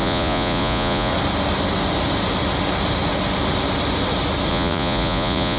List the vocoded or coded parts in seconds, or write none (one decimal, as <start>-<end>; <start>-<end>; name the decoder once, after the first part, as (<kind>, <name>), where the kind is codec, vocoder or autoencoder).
0.0-1.1 (vocoder, Vocos); 4.5-5.6

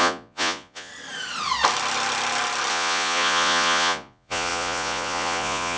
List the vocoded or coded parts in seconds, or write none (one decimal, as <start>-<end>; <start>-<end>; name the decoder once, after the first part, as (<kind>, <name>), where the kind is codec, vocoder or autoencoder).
0.0-0.9 (vocoder, Vocos); 2.7-5.8